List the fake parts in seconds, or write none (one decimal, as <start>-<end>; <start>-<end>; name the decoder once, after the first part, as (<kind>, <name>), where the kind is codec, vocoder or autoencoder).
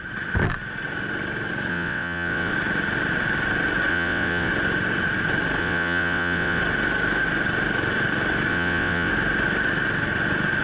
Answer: 1.7-2.5 (vocoder, WaveNeXt); 3.9-4.5; 5.6-6.6; 8.5-9.1